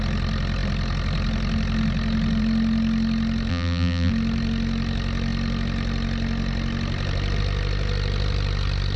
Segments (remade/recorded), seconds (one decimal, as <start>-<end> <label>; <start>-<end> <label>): 0.0-3.5 recorded; 3.5-4.1 remade; 4.1-9.0 recorded